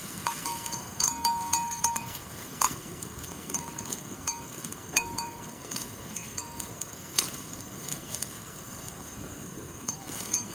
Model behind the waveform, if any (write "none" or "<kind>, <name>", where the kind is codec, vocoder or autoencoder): codec, SNAC